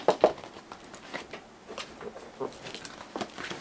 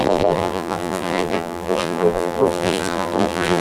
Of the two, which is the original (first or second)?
first